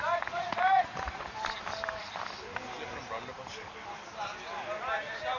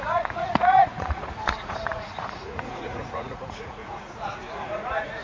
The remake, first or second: second